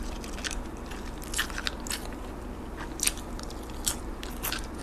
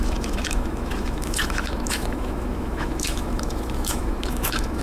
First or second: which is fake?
second